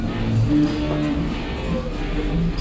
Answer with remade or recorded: recorded